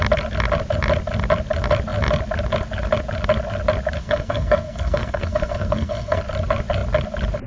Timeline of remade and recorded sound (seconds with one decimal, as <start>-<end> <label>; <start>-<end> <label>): 0.0-4.0 recorded; 4.0-6.2 remade; 6.2-7.5 recorded